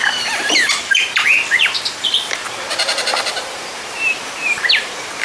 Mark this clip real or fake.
fake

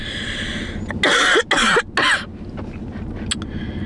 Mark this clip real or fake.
real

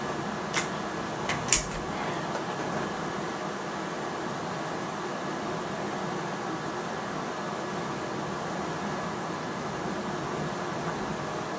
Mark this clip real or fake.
real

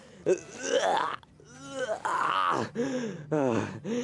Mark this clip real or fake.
real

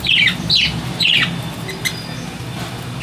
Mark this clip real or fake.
real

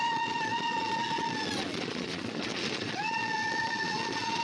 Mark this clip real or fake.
fake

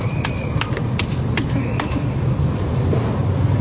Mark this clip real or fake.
real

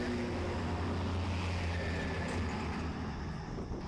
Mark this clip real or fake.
real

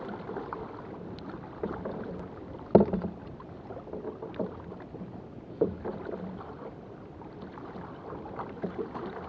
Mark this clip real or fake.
real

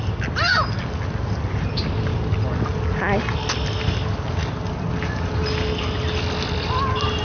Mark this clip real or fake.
real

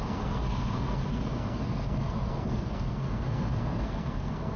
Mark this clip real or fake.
fake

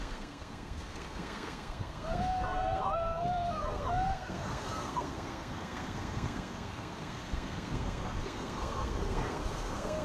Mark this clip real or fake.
fake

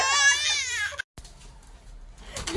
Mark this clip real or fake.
real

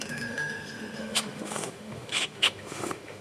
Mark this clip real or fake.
fake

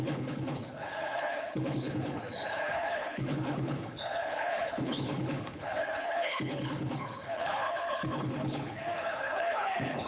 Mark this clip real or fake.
fake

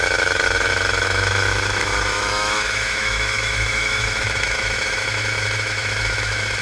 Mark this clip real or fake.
fake